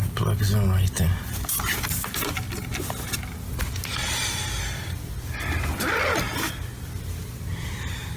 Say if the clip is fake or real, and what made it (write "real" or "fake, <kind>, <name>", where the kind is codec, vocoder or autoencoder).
real